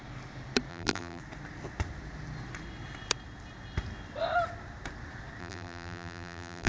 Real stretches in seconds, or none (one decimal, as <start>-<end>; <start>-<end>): 0.0-0.7; 1.2-5.4

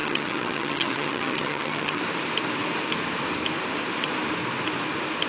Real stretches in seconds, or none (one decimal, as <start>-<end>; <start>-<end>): 2.0-5.3

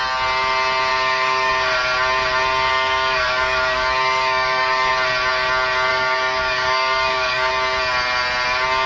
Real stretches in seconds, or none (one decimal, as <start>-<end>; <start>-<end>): 0.0-0.9; 1.5-2.7; 4.9-5.9; 7.5-8.9

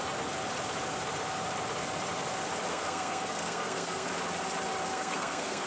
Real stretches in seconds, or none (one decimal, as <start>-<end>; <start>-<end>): 0.0-2.7; 4.1-4.9

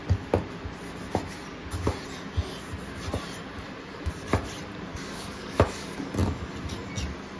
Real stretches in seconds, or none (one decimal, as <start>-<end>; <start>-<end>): 0.0-4.9; 6.1-7.4

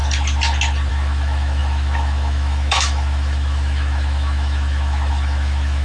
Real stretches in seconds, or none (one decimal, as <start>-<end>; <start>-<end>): 0.0-0.9

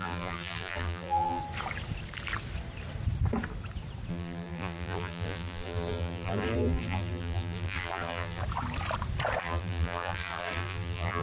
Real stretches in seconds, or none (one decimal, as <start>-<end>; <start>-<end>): 1.4-4.1; 8.4-9.4